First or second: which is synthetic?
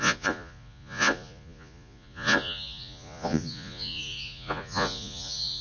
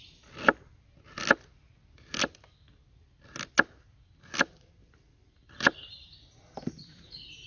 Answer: first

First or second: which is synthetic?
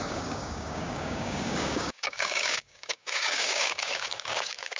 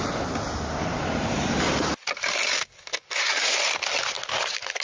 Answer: first